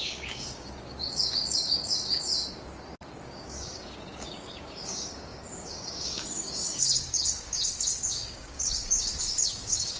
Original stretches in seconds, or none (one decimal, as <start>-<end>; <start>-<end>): 2.3-3.2